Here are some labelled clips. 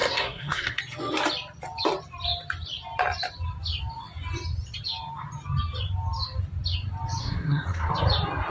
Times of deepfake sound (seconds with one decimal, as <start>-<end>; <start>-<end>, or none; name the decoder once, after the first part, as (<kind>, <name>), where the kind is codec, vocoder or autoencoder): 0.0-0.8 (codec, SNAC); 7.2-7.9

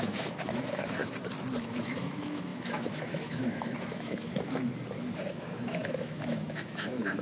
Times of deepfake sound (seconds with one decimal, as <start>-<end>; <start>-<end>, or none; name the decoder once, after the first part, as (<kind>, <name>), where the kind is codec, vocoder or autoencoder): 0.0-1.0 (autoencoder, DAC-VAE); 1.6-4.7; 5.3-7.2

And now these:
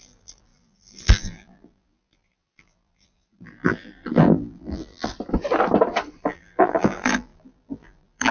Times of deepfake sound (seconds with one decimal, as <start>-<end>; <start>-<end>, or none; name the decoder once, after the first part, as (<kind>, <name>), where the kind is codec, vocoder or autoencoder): 0.0-5.1 (vocoder, BigVGAN v2); 6.2-8.3

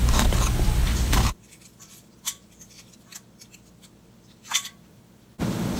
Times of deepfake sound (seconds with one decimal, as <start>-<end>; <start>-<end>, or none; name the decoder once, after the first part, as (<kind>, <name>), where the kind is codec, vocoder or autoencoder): 0.0-5.8 (vocoder, BigVGAN v2)

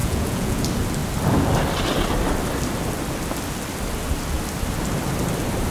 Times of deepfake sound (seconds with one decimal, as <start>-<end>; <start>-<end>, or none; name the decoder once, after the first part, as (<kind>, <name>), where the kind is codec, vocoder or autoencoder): 0.0-0.6 (vocoder, Vocos)

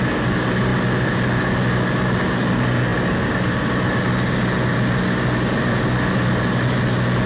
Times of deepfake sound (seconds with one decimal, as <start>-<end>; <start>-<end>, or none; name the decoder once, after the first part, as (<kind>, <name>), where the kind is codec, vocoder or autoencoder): none

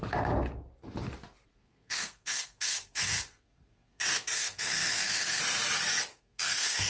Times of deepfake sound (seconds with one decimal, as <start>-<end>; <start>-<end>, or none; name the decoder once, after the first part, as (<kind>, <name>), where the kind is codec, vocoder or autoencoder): 1.5-5.4 (codec, SNAC); 6.1-6.9